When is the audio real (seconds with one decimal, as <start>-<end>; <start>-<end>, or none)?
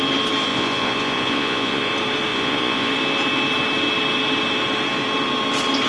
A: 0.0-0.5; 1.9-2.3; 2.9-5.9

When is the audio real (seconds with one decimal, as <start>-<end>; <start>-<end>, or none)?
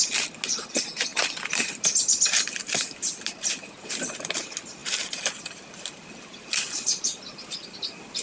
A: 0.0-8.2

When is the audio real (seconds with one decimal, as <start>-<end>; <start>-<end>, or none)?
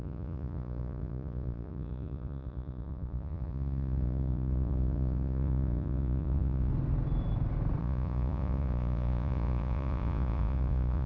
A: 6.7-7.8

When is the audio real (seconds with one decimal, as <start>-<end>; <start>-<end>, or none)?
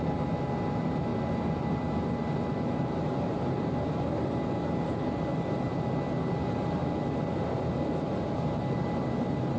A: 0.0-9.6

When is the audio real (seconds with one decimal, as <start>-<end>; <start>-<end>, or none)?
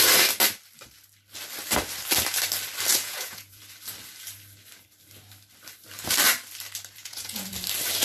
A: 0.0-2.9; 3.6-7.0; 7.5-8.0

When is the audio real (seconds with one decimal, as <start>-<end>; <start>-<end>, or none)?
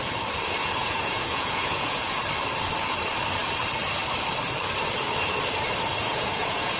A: 0.0-0.6; 2.2-6.0